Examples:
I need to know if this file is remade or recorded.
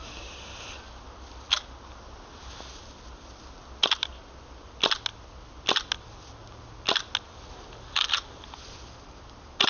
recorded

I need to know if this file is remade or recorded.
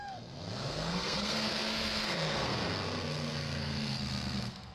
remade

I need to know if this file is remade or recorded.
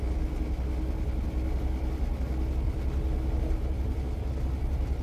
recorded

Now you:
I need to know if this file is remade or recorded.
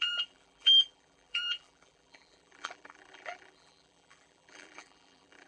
remade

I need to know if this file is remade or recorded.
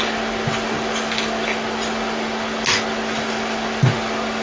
recorded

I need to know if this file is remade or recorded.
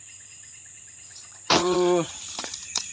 remade